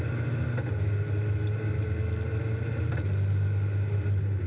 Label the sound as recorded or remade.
recorded